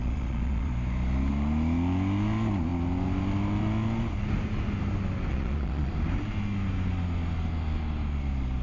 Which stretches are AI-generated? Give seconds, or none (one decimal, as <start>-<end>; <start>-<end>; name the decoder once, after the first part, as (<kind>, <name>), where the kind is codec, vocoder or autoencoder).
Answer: 0.0-0.7 (vocoder, Vocos); 5.3-5.9